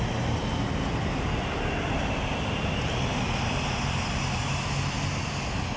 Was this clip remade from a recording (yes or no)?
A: no